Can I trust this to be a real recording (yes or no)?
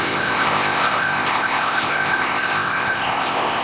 no